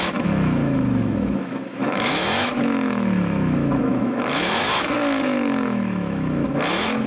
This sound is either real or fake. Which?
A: fake